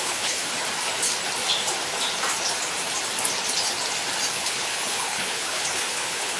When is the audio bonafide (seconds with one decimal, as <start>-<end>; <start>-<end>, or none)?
0.5-4.3